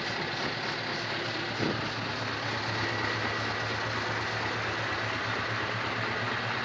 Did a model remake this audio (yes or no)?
no